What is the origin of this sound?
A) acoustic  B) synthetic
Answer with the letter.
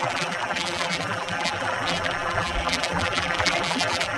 B